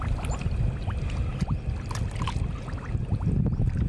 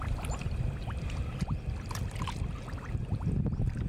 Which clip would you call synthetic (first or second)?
second